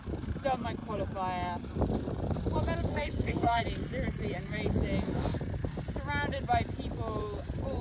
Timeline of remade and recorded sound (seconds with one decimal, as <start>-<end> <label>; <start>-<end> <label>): 0.0-2.9 recorded; 2.9-3.6 remade; 3.6-7.8 recorded